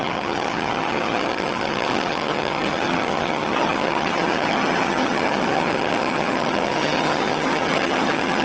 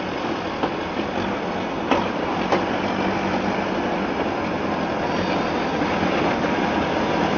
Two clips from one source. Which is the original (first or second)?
second